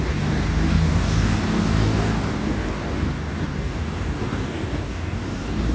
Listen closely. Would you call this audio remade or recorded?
remade